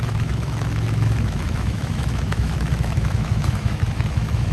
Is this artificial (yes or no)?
yes